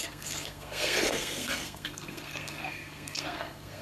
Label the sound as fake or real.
fake